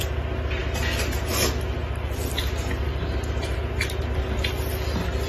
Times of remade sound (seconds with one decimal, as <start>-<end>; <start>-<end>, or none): none